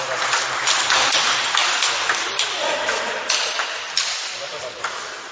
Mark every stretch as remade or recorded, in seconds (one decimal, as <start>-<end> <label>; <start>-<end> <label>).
0.0-1.6 remade; 1.6-2.5 recorded; 2.5-5.3 remade